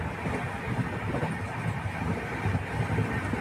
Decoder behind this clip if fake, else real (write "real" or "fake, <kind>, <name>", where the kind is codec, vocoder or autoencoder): real